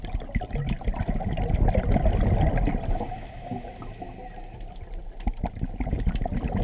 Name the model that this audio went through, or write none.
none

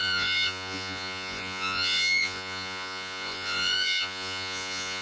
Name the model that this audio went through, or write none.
vocoder, Vocos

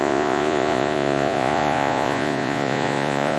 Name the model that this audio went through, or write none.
vocoder, Vocos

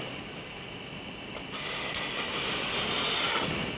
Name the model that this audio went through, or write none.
none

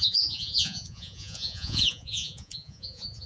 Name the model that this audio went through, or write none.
vocoder, Vocos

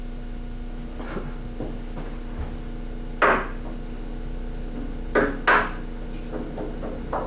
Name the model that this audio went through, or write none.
none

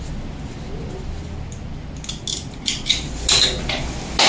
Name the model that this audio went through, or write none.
none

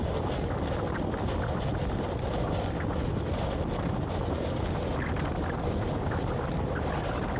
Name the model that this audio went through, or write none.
none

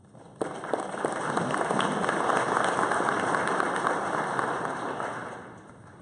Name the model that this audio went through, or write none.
none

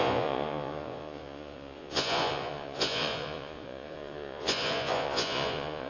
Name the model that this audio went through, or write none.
vocoder, Vocos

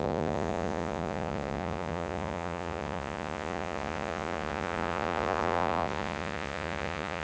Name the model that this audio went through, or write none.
vocoder, Vocos